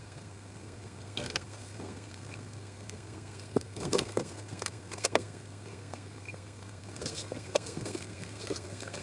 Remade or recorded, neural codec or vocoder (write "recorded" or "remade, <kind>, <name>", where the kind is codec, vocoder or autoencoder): remade, codec, SNAC